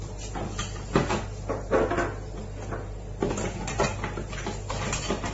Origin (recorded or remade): recorded